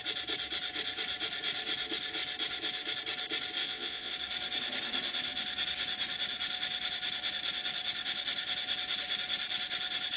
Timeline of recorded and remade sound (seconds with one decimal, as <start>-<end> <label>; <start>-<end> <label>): 0.0-3.6 recorded; 3.6-4.1 remade; 4.1-10.2 recorded